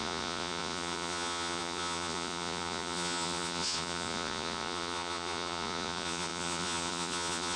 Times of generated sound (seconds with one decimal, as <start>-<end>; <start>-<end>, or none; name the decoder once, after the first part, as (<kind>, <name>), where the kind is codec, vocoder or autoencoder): 0.0-7.6 (vocoder, Vocos)